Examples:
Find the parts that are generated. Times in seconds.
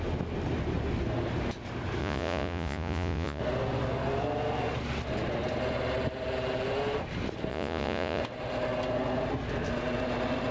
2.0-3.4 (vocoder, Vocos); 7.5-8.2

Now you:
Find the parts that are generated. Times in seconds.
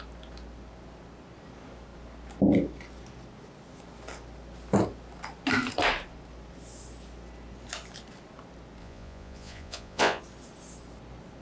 8.8-10.2 (vocoder, Vocos)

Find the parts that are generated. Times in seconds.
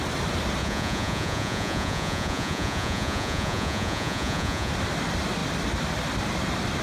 0.6-4.7 (vocoder, Vocos)